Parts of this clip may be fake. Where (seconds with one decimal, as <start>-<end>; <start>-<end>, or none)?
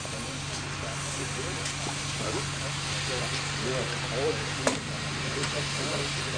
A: none